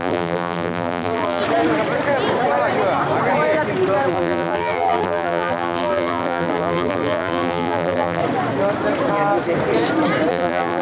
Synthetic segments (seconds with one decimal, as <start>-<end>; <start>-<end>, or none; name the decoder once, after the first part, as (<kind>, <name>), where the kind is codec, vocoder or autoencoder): 0.0-1.4 (vocoder, BigVGAN v2); 4.1-8.2; 10.3-10.8